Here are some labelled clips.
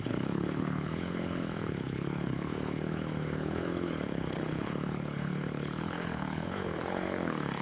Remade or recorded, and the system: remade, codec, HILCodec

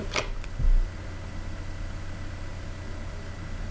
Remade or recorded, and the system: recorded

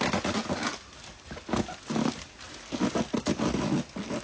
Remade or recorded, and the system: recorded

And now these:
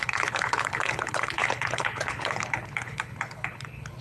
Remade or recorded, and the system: remade, codec, HILCodec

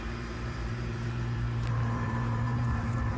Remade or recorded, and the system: remade, vocoder, BigVGAN v2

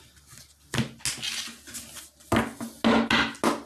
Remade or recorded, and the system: recorded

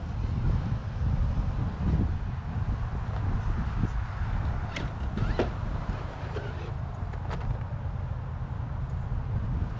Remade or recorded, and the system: recorded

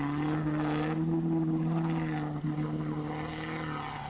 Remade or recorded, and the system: recorded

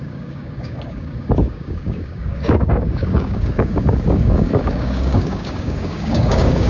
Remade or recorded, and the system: remade, codec, DAC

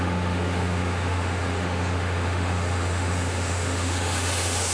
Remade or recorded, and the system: remade, autoencoder, DAC-VAE